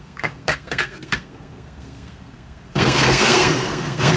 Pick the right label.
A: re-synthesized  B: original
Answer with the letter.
A